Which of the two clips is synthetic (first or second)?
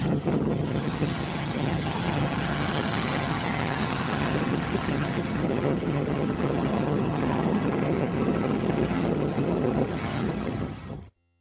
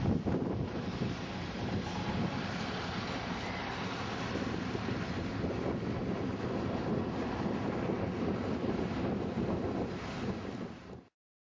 first